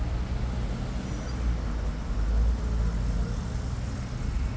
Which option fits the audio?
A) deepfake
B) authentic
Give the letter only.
B